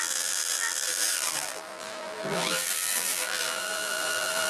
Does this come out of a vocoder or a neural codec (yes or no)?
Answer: yes